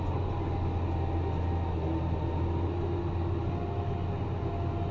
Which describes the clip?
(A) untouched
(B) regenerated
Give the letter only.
A